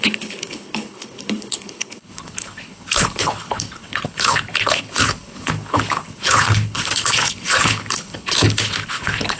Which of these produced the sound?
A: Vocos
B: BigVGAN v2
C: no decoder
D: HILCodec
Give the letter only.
D